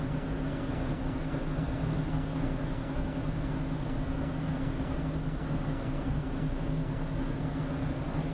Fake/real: fake